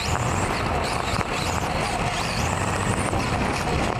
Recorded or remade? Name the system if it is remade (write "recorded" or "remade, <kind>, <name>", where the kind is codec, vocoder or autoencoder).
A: remade, vocoder, BigVGAN v2